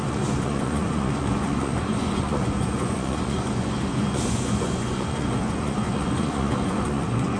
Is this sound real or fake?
fake